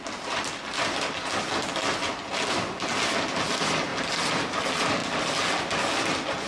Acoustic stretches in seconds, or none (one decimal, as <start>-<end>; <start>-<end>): 0.0-6.5